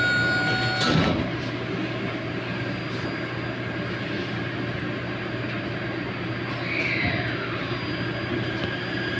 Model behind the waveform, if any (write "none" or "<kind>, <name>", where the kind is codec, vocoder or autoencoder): none